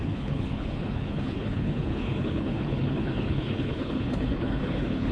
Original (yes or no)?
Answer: no